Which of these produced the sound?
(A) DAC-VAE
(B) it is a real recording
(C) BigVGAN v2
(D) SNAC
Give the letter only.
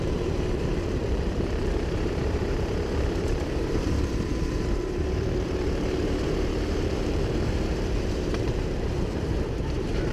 C